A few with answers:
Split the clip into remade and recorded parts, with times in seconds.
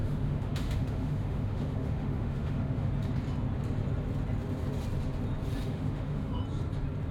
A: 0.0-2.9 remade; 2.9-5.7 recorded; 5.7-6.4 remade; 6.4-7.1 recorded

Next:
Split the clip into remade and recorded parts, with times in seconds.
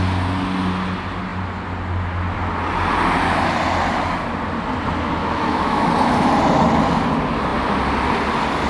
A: 0.0-5.2 recorded; 5.2-5.9 remade; 5.9-8.7 recorded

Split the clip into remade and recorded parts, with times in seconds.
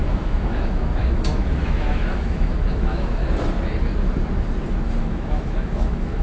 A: 0.0-3.2 remade; 3.2-5.0 recorded; 5.0-6.2 remade